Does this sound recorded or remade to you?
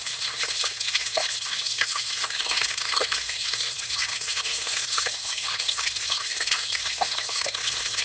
remade